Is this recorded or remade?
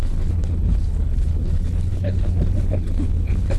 remade